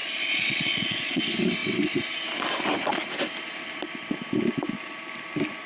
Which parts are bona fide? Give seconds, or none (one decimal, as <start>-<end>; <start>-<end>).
1.2-5.7